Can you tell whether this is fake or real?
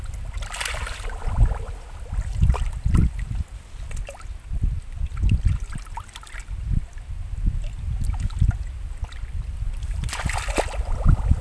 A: real